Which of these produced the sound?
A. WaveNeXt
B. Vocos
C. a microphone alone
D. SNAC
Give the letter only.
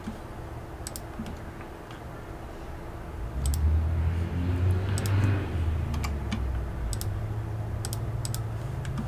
C